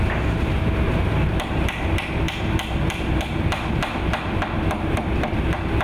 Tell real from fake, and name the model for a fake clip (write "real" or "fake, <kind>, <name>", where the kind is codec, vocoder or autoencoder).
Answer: real